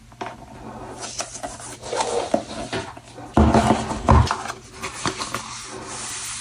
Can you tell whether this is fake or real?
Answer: real